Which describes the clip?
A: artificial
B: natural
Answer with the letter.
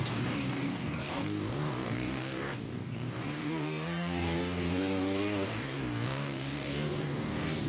A